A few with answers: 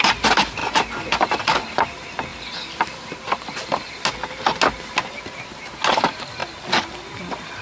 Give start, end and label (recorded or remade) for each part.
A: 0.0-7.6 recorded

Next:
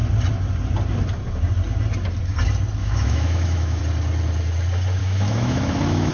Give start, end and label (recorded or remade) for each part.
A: 0.0-2.8 recorded; 2.8-3.8 remade; 3.8-5.0 recorded; 5.0-6.1 remade

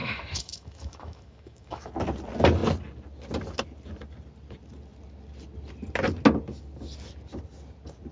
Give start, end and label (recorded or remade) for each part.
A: 0.0-1.9 remade; 1.9-8.1 recorded

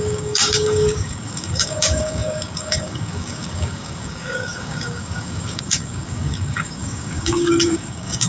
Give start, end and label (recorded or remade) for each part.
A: 0.0-8.3 remade

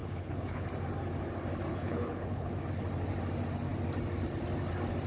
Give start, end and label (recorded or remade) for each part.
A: 0.0-0.7 remade; 0.7-1.7 recorded; 1.7-2.5 remade; 2.5-5.1 recorded

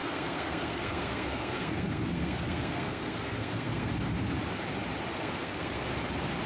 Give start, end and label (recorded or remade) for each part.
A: 0.0-3.9 remade; 3.9-5.1 recorded; 5.1-5.9 remade; 5.9-6.5 recorded